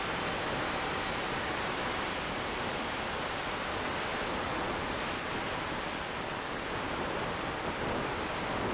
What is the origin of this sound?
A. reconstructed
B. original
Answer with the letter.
B